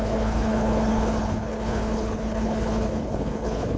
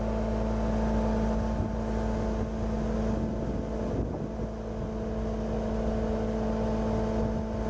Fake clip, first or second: first